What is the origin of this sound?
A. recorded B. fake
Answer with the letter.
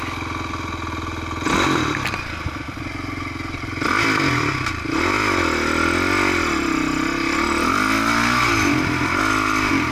A